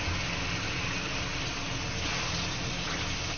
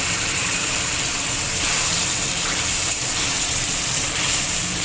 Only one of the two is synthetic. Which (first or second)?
second